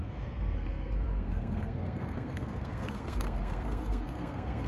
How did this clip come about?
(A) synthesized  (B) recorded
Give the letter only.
A